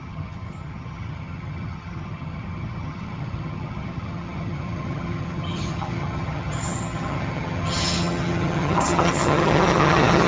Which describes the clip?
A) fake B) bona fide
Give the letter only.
A